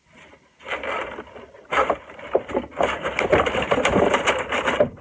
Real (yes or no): yes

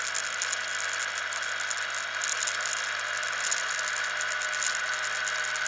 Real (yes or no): yes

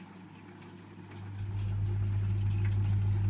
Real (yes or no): yes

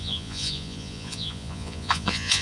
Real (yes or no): no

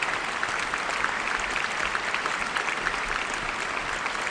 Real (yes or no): yes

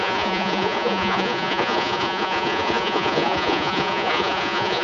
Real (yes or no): no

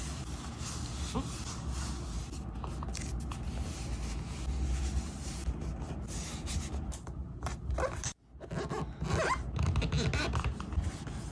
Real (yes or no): yes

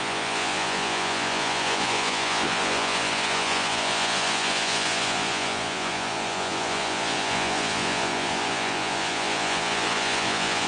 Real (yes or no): no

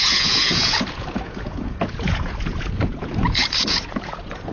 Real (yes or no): no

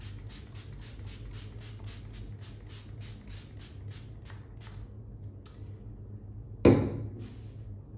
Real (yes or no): yes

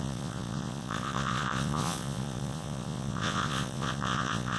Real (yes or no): no